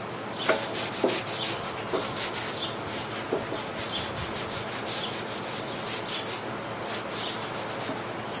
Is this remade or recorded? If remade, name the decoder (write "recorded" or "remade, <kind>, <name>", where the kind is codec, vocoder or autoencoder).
recorded